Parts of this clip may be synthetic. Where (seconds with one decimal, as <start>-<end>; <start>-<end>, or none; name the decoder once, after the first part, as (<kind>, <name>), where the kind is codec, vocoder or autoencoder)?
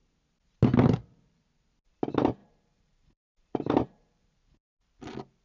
2.4-4.1 (vocoder, BigVGAN v2)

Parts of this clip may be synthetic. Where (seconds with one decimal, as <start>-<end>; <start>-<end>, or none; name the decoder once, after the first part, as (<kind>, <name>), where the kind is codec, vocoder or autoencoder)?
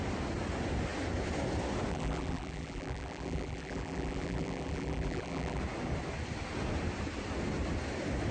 1.9-5.6 (vocoder, BigVGAN v2)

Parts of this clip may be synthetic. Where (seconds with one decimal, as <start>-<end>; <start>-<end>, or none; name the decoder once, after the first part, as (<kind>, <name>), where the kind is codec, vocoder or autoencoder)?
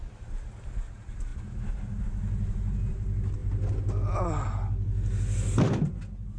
none